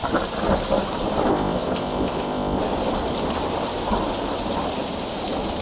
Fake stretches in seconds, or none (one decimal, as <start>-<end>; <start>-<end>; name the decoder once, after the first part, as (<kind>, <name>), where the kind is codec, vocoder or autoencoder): 1.3-2.6 (codec, ZipCodec)